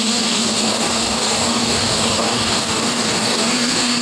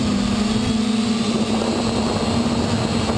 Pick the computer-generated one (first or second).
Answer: first